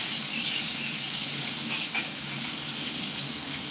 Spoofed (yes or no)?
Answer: yes